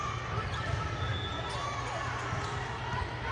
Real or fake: real